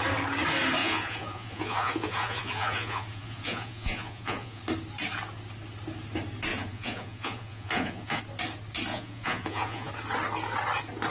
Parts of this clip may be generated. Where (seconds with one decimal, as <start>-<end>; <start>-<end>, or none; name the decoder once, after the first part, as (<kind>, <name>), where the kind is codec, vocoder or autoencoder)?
0.8-4.6 (vocoder, Vocos); 6.5-8.2; 8.9-9.9